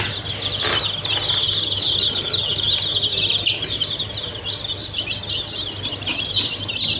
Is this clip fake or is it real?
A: real